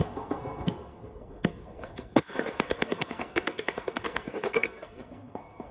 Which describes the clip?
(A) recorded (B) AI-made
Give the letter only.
B